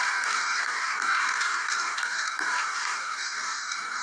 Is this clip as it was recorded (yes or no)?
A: no